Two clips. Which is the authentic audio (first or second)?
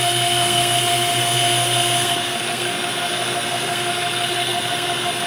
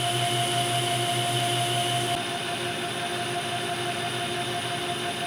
second